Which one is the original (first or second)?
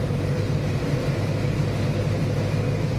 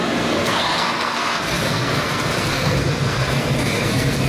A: first